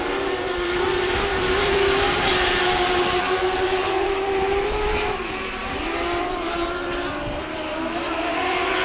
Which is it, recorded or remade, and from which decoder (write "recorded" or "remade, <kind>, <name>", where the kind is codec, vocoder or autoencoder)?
remade, vocoder, BigVGAN v2